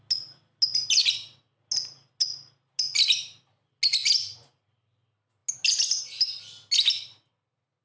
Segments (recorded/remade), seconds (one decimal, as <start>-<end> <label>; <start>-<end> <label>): 0.0-7.8 recorded